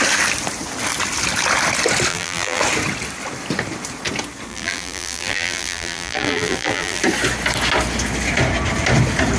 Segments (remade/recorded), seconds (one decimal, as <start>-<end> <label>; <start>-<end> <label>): 0.0-2.1 recorded; 2.1-2.6 remade; 2.6-4.5 recorded; 4.5-7.0 remade; 7.0-9.4 recorded